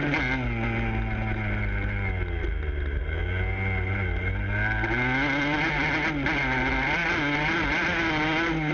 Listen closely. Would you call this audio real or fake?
real